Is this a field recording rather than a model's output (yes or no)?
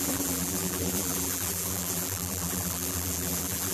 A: no